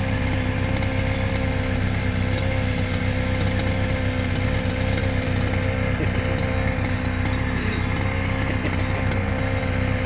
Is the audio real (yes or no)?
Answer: yes